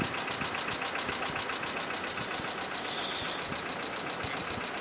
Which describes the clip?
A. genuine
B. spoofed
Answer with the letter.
A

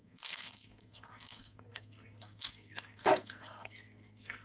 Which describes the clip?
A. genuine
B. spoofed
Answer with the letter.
B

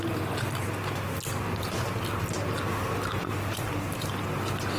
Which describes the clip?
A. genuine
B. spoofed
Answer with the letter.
A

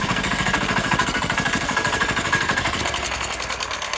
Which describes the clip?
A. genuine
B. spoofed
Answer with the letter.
B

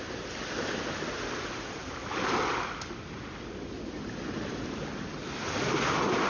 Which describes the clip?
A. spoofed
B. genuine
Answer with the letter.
B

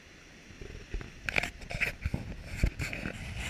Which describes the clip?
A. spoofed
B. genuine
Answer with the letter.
B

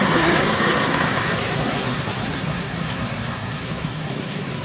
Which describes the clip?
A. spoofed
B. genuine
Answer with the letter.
A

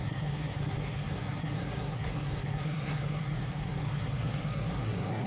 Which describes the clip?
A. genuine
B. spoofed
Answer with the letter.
B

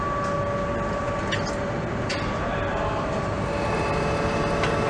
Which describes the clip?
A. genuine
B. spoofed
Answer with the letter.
A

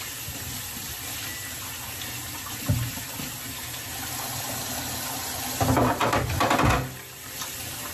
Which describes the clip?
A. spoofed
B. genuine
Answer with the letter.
B